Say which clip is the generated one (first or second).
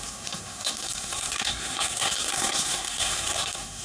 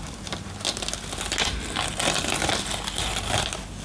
first